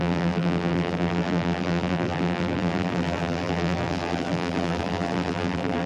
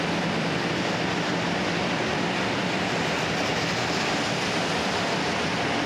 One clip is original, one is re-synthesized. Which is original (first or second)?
second